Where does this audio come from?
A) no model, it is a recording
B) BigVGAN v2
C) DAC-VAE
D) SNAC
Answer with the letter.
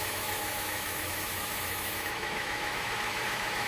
C